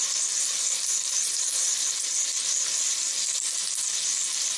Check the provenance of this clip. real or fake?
real